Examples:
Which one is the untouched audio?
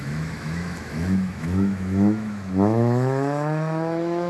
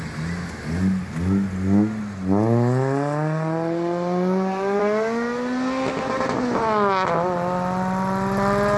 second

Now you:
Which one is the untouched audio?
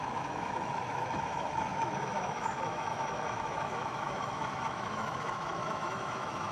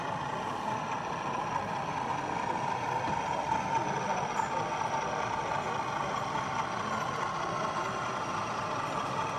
second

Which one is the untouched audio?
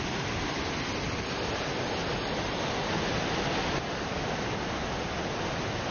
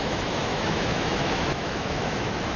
first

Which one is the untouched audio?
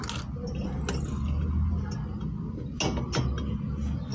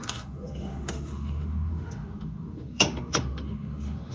first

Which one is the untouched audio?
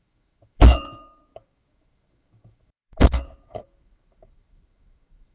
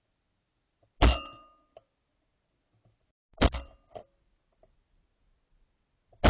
second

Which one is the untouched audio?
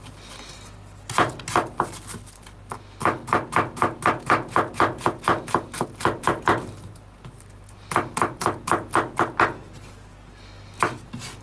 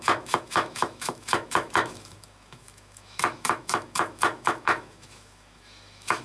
first